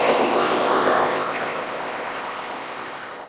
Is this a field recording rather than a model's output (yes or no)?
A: no